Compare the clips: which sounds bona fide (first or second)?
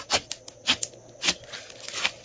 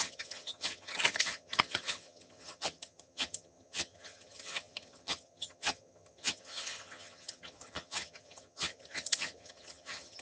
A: first